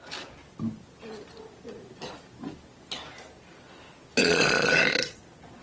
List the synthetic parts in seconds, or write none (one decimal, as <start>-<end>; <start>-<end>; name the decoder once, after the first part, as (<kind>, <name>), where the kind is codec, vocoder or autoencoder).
4.2-5.6 (vocoder, Vocos)

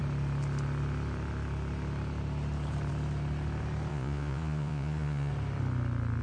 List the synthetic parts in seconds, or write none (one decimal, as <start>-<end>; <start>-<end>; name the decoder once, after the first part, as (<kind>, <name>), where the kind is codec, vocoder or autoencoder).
3.9-5.3 (vocoder, Vocos)

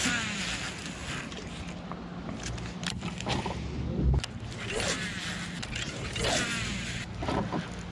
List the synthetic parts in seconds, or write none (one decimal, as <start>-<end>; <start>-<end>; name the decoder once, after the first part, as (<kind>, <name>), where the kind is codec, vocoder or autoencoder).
none

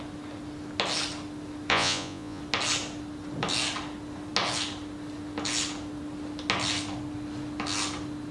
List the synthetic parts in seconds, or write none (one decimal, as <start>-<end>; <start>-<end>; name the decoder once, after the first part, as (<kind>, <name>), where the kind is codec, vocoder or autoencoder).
1.7-2.4 (vocoder, Vocos)

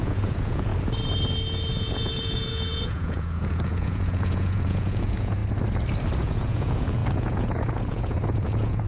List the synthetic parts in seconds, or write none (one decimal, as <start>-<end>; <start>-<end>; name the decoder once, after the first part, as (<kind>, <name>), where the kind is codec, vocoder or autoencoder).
0.0-0.7 (vocoder, Vocos); 1.8-5.4; 6.2-8.9

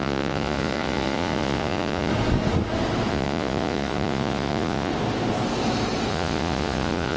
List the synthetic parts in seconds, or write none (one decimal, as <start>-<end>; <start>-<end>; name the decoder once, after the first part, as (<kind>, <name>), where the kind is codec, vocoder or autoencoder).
0.0-2.1 (vocoder, Vocos); 3.1-4.9; 6.1-7.2

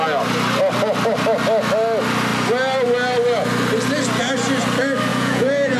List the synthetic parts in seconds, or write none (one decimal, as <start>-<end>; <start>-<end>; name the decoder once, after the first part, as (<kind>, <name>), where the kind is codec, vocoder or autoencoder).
5.1-5.8 (vocoder, Vocos)